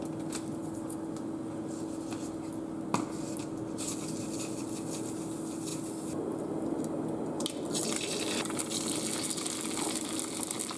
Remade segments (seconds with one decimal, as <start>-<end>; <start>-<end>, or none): none